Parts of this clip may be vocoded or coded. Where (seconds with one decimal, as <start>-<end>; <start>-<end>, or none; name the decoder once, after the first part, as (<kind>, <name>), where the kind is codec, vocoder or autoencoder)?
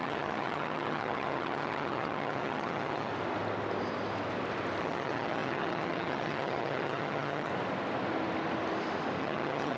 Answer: 0.0-3.1 (vocoder, HiFi-GAN); 4.8-7.5; 9.2-9.8